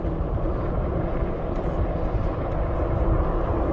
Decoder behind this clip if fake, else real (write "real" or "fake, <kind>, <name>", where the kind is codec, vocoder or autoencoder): real